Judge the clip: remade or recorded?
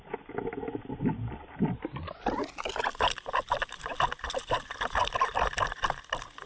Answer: recorded